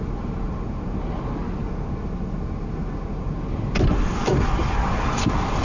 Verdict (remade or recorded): recorded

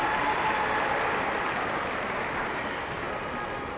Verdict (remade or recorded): recorded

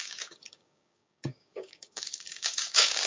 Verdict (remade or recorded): remade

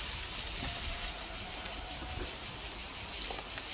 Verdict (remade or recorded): recorded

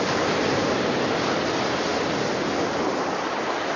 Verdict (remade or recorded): recorded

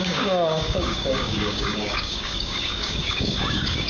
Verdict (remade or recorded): remade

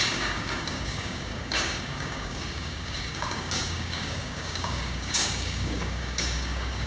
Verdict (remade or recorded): remade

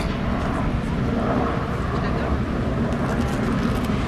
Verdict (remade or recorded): recorded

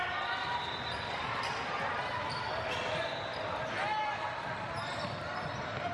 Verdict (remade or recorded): recorded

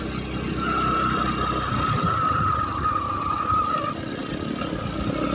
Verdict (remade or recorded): recorded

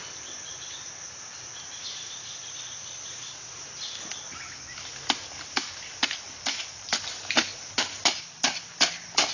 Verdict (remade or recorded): recorded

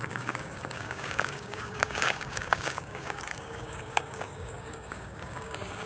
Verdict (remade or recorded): remade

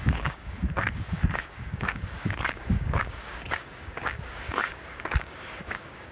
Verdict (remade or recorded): remade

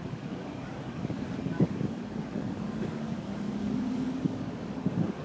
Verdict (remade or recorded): remade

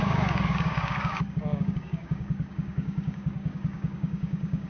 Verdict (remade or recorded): remade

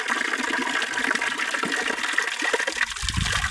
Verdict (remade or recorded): recorded